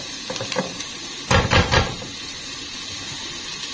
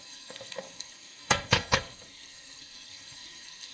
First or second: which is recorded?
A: first